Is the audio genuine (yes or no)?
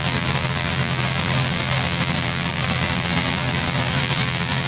no